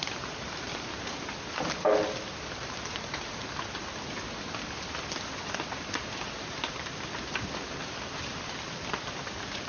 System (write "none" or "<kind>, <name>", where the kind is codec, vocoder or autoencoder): none